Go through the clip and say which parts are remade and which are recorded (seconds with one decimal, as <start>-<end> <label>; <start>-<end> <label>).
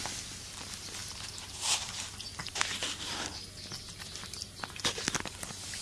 0.0-5.8 recorded